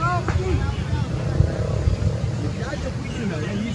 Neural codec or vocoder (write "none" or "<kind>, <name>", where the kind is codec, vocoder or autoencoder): none